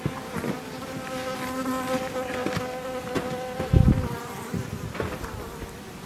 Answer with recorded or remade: recorded